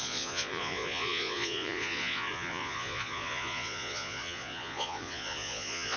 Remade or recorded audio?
remade